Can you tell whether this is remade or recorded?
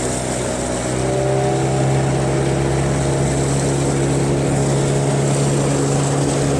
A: recorded